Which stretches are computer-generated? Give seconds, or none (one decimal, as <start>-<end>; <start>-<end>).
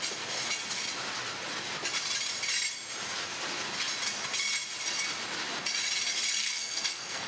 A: 6.4-7.3